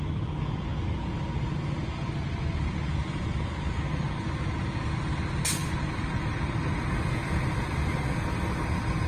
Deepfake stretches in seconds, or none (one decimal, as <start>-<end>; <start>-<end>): none